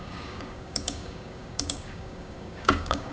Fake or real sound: fake